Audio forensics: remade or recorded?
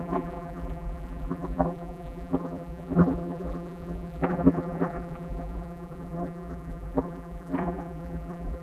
remade